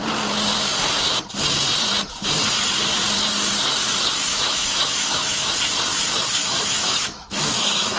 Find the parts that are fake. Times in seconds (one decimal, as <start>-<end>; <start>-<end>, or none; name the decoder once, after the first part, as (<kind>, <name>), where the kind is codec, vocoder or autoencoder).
4.3-5.5 (autoencoder, DAC-VAE); 6.4-8.0